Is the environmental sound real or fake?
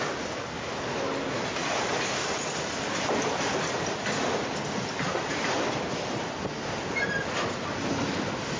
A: real